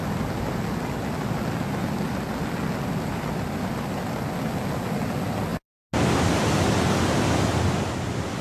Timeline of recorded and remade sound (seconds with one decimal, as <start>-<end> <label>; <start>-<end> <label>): 0.0-8.4 recorded